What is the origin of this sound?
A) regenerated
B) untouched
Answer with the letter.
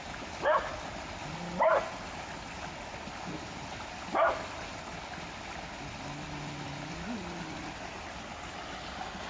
B